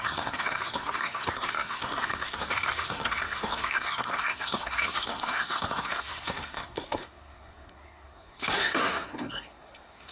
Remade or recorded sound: remade